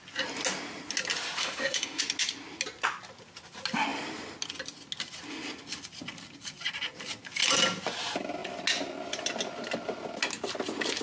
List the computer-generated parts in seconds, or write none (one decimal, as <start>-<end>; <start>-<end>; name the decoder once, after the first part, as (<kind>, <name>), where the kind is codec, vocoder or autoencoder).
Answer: 1.4-2.0 (autoencoder, DAC-VAE)